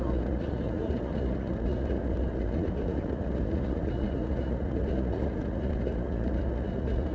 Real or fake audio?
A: fake